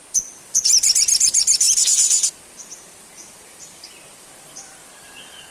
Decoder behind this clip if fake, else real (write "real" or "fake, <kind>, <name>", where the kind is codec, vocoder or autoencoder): fake, vocoder, BigVGAN v2